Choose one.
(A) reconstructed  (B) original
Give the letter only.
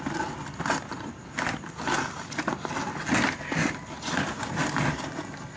B